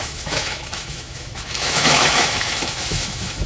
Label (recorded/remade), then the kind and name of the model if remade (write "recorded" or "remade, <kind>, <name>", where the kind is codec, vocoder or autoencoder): remade, autoencoder, DAC-VAE